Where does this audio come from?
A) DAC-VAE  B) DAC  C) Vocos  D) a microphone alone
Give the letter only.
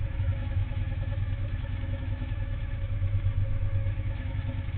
A